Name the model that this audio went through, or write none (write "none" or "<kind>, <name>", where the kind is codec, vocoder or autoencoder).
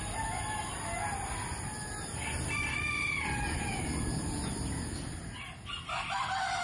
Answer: none